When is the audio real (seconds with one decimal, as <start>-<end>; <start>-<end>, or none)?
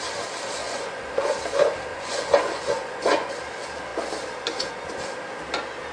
0.0-0.6; 1.3-1.9; 3.3-5.9